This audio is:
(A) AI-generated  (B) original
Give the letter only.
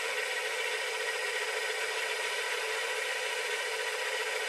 A